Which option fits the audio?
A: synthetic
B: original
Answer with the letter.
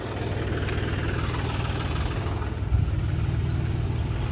B